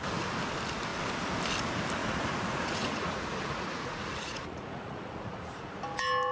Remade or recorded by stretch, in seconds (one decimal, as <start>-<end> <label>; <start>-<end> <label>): 0.0-2.0 recorded; 2.0-5.8 remade; 5.8-6.3 recorded